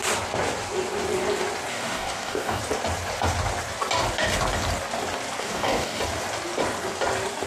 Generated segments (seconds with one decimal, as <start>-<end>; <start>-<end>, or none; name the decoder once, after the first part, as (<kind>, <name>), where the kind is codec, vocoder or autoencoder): 1.7-2.6 (codec, DAC); 5.4-6.0